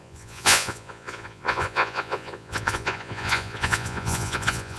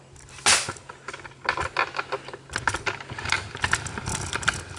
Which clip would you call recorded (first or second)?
second